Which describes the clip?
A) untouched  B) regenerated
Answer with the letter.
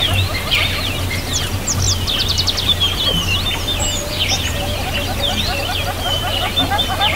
A